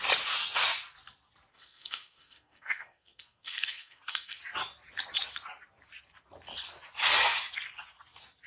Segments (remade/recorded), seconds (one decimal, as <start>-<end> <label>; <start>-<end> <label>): 0.0-1.5 recorded; 1.5-4.4 remade; 4.4-8.5 recorded